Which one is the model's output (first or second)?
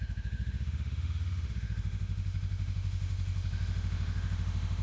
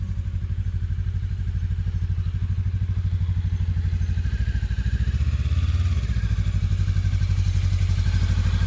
first